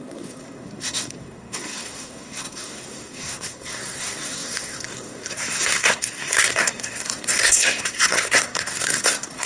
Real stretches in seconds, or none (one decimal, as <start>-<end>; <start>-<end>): none